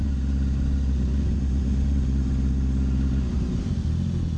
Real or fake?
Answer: real